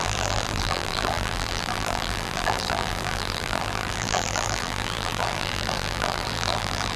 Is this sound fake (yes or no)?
yes